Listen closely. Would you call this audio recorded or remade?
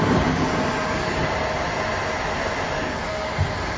recorded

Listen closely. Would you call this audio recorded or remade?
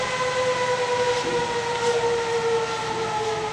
recorded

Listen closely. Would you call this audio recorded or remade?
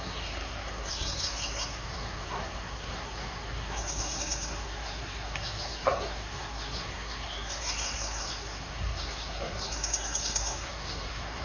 remade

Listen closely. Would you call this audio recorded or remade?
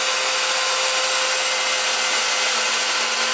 recorded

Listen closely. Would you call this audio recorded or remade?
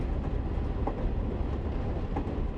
recorded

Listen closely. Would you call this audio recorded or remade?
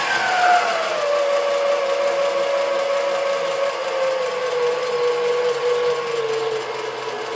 recorded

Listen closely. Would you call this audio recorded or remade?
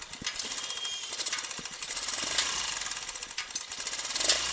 recorded